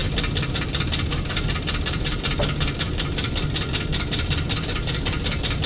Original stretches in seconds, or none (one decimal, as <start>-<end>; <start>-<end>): 0.0-5.7